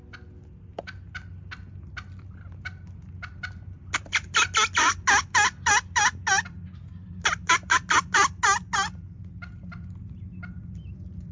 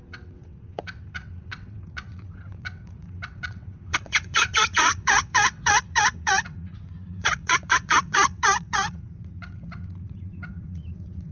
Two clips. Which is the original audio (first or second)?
first